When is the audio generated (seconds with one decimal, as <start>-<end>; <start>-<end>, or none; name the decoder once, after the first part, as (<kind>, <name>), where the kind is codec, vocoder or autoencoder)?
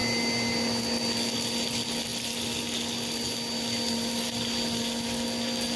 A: none